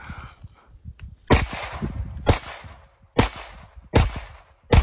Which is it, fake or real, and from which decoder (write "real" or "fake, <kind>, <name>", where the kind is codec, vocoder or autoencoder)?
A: real